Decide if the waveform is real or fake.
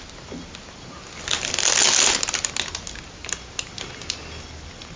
real